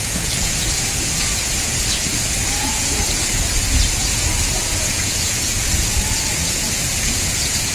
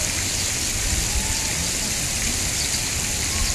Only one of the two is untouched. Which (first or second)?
second